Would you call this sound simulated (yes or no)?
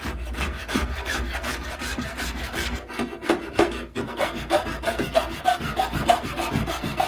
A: yes